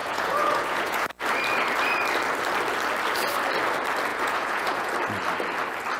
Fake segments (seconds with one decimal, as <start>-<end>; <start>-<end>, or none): 0.0-1.1; 4.1-4.9